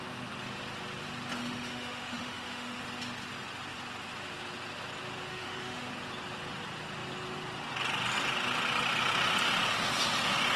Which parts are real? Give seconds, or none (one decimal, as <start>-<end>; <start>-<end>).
0.0-1.4; 2.8-5.3; 5.9-10.6